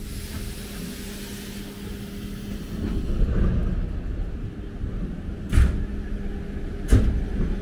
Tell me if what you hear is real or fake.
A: real